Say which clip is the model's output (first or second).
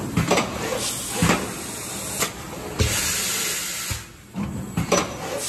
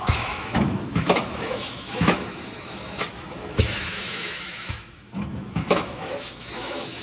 second